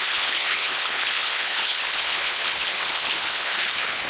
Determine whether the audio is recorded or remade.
remade